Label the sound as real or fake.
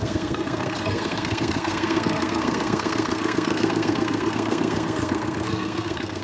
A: fake